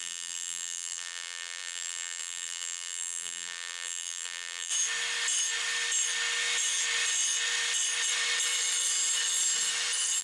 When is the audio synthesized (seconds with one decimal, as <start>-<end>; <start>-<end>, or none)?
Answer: 0.0-4.7